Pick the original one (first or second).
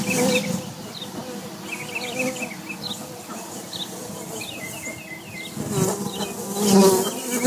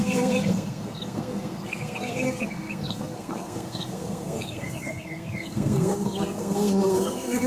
first